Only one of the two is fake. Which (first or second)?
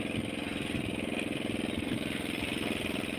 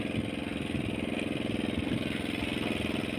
first